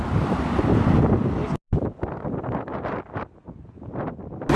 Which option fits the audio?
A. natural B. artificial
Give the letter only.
A